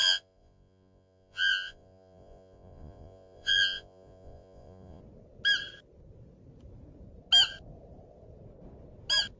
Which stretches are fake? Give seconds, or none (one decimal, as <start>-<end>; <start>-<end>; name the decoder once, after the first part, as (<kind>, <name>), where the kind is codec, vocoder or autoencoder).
0.0-5.0 (vocoder, Vocos)